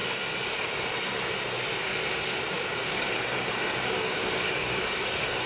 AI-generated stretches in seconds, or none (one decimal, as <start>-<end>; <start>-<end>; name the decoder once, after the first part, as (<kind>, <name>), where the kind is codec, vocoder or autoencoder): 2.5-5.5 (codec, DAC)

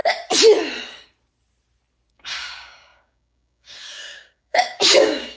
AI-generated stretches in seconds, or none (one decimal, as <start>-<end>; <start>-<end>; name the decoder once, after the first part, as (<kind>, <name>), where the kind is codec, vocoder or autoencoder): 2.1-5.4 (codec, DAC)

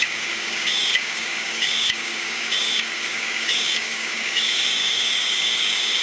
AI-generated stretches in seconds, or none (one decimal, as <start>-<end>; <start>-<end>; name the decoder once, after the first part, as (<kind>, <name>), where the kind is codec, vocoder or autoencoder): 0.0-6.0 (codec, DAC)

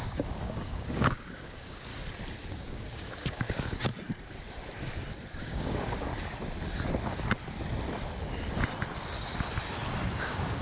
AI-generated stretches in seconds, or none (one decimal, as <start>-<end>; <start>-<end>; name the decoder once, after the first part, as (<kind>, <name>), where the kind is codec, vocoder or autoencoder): 0.0-1.9 (codec, DAC); 2.5-3.9; 5.4-6.1; 10.2-10.6